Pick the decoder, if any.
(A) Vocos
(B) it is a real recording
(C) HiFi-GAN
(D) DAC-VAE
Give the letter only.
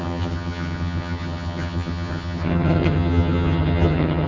C